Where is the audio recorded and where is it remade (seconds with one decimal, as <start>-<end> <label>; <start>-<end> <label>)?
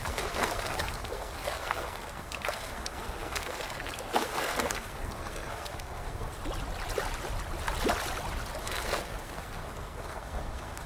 0.0-6.4 remade; 6.4-8.6 recorded; 8.6-10.9 remade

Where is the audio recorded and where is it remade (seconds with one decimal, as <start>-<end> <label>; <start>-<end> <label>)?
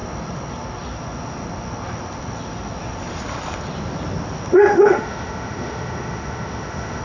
0.0-4.7 recorded; 4.7-7.0 remade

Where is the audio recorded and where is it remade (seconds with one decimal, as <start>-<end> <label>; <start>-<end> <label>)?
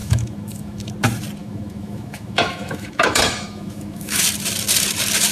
0.0-0.9 remade; 0.9-1.4 recorded; 1.4-4.2 remade; 4.2-5.3 recorded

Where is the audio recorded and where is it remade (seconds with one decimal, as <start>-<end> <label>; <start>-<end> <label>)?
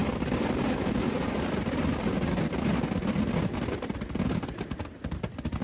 0.0-5.6 recorded